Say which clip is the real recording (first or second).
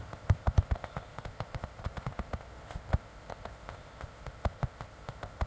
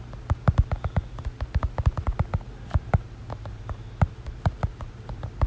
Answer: second